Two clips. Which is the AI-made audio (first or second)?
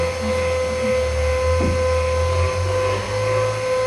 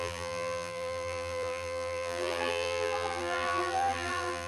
second